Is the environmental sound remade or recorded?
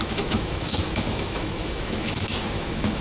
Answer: remade